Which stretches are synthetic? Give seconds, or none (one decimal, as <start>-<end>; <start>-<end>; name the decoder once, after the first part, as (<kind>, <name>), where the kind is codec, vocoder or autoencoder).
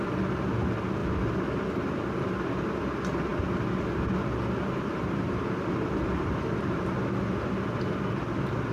none